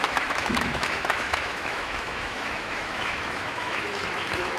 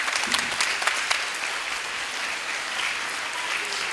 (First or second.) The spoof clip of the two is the first